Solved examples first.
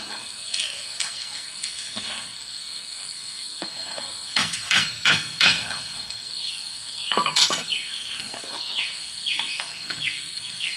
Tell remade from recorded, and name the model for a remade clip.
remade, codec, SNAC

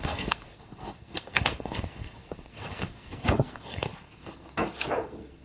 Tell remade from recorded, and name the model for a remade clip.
remade, codec, SNAC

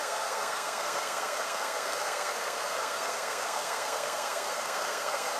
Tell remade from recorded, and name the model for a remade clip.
remade, codec, SNAC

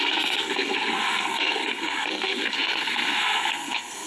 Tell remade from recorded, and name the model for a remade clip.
remade, codec, SNAC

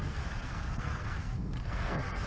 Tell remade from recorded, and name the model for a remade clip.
remade, codec, SNAC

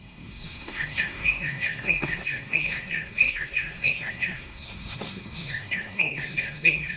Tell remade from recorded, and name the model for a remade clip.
remade, codec, SNAC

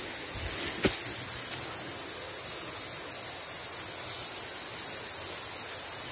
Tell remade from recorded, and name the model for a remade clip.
recorded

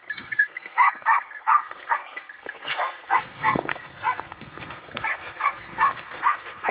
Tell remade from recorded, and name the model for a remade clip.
remade, codec, SNAC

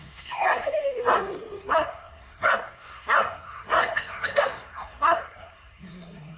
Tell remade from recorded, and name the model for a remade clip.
remade, codec, SNAC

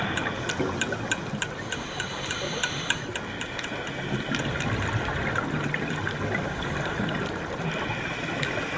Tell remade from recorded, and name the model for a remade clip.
recorded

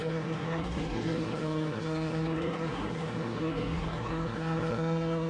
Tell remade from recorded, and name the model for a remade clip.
remade, codec, SNAC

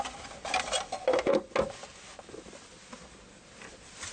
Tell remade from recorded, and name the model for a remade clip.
recorded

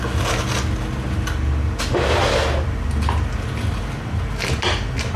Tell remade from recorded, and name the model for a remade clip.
recorded